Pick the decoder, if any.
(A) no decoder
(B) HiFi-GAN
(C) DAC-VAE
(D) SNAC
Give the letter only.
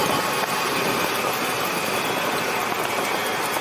A